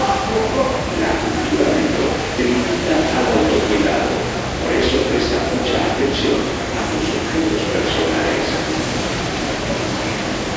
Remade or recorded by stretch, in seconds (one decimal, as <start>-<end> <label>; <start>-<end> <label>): 0.0-10.6 recorded